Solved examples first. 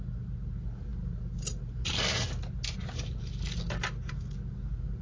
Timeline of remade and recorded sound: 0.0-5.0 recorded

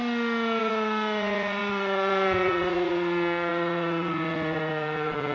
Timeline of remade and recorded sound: 0.0-0.6 recorded; 0.6-5.3 remade

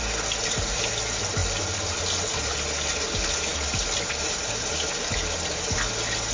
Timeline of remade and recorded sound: 0.0-6.3 recorded

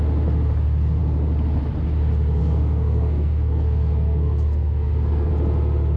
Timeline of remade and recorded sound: 0.0-2.4 recorded; 2.4-5.3 remade; 5.3-6.0 recorded

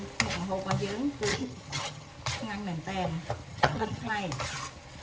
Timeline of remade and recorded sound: 0.0-1.3 recorded; 1.3-2.1 remade; 2.1-3.5 recorded; 3.5-4.1 remade; 4.1-5.0 recorded

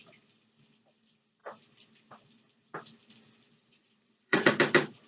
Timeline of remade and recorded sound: 0.0-3.6 recorded; 3.6-4.5 remade; 4.5-5.1 recorded